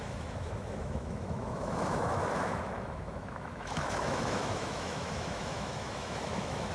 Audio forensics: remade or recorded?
remade